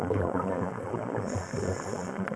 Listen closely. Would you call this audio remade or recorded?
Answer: remade